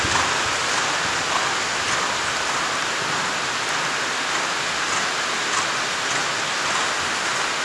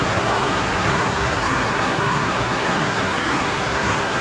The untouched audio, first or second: first